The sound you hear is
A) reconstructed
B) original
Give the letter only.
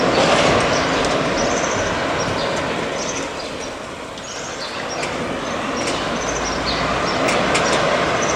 B